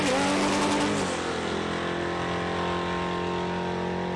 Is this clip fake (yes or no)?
no